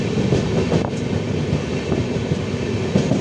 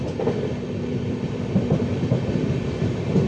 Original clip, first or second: first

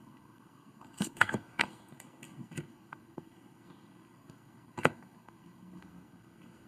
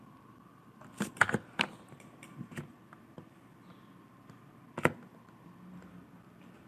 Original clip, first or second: second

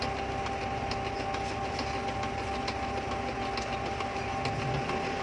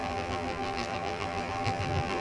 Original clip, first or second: first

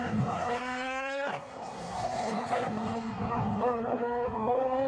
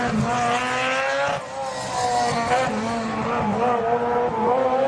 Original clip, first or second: second